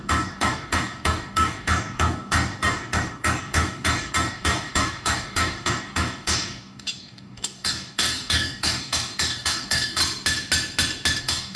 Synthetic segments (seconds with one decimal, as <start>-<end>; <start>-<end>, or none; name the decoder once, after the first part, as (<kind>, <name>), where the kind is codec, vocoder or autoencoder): 0.0-10.0 (codec, DAC); 11.2-11.6